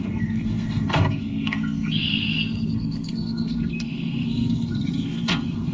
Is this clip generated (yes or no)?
yes